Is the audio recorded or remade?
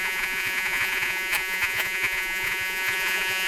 remade